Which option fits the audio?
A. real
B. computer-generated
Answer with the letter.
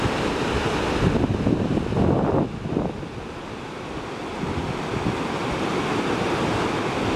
A